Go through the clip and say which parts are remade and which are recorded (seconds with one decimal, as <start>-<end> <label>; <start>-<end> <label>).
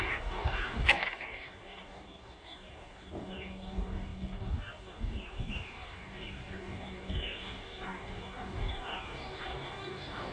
0.0-10.3 remade